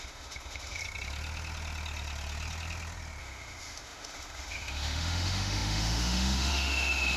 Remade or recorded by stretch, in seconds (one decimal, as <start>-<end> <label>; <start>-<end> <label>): 0.0-0.8 remade; 0.8-3.2 recorded; 3.2-7.2 remade